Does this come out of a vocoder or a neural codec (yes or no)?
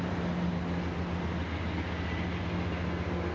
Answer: no